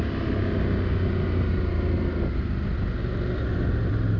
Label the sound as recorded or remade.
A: recorded